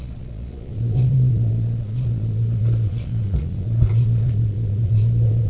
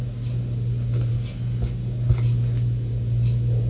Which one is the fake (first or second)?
first